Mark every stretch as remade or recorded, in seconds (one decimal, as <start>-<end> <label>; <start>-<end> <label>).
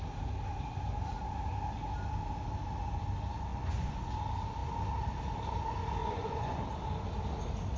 0.0-3.5 recorded; 3.5-4.0 remade; 4.0-6.0 recorded; 6.0-6.6 remade; 6.6-7.8 recorded